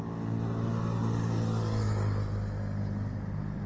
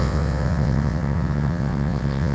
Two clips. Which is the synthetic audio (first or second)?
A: second